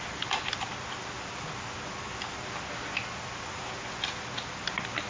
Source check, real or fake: real